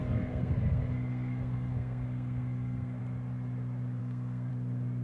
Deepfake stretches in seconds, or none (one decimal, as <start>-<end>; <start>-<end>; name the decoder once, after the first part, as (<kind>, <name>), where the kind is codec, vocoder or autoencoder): 0.0-3.0 (codec, SNAC); 4.0-4.5